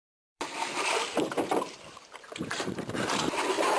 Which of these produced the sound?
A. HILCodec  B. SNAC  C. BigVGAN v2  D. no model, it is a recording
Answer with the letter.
C